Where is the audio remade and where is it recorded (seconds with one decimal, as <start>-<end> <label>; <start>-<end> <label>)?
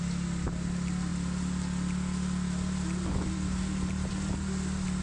0.0-5.0 recorded